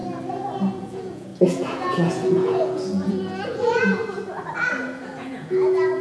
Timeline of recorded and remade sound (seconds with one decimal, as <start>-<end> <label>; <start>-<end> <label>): 0.0-0.6 recorded; 0.6-4.0 remade; 4.0-4.8 recorded; 4.8-6.0 remade